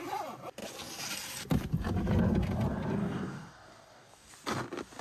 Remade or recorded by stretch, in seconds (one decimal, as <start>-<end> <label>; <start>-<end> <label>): 0.0-3.0 recorded; 3.0-4.3 remade; 4.3-5.0 recorded